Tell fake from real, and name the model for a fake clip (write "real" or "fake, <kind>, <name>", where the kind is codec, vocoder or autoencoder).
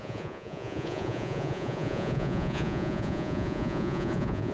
fake, vocoder, Vocos